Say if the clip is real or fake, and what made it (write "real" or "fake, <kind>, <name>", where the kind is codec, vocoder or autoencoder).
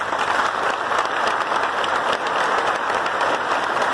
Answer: real